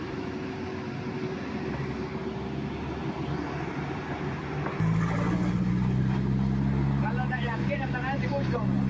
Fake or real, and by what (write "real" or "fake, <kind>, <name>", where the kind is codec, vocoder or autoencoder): real